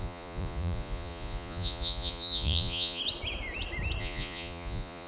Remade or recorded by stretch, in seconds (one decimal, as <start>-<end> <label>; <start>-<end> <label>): 0.0-3.0 remade; 3.0-4.0 recorded; 4.0-5.1 remade